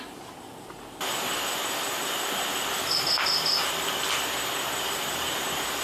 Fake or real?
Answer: real